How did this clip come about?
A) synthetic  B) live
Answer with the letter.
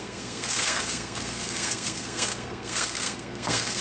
A